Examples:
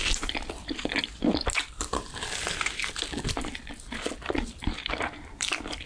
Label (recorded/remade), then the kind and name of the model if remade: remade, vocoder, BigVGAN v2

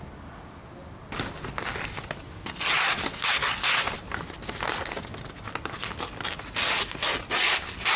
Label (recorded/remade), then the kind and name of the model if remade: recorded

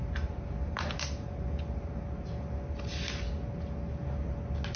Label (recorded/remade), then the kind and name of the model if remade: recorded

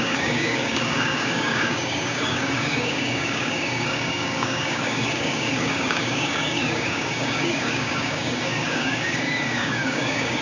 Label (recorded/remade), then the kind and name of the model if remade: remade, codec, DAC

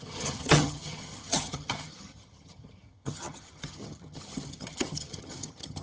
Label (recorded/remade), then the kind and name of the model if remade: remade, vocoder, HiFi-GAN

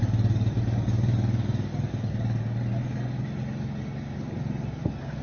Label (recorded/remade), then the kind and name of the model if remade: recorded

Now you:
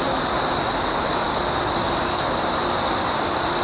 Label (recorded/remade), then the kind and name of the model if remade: recorded